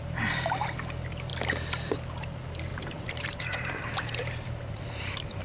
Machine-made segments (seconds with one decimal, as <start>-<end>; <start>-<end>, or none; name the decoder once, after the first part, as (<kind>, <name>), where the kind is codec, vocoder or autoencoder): 2.7-5.4 (vocoder, BigVGAN v2)